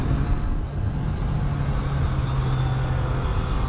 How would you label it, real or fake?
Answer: real